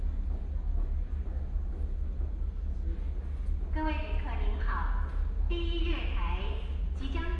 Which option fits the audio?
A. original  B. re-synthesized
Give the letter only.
A